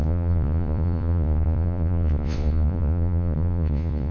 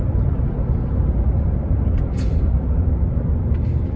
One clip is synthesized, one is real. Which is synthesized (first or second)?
first